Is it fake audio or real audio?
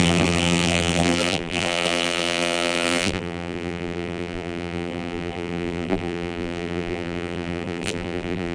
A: fake